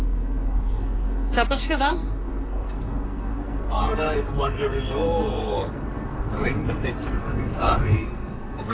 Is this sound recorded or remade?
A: remade